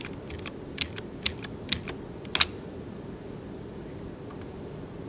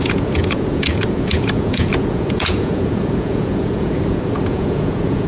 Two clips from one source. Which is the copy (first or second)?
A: second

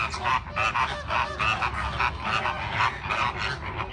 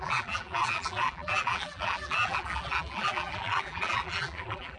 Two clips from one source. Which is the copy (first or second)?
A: second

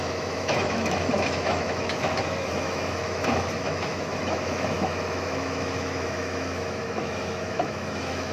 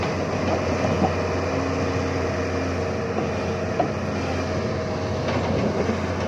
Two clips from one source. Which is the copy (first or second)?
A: first